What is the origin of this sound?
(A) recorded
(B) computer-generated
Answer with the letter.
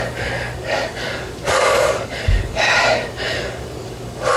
B